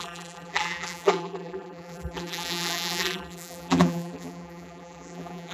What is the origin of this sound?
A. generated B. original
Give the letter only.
A